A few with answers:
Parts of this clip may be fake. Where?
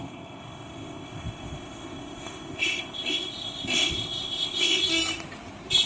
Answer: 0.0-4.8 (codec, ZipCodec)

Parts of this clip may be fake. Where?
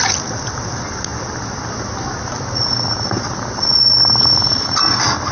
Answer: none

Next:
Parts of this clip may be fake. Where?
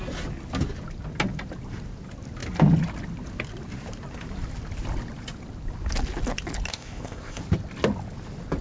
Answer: 6.7-7.4 (codec, ZipCodec)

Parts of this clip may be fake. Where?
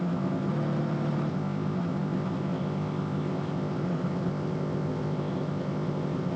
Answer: 0.0-0.5 (codec, ZipCodec); 1.3-6.4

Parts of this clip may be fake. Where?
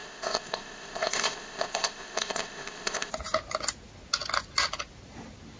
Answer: 0.0-3.1 (codec, ZipCodec)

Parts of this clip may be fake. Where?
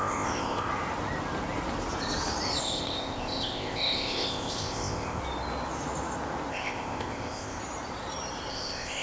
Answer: 0.0-0.7 (codec, ZipCodec); 2.6-5.2; 6.5-7.6; 8.5-9.0